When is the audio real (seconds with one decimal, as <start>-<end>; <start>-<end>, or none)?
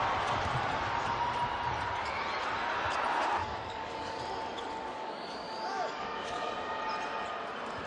0.0-3.4; 4.2-4.8; 6.5-7.9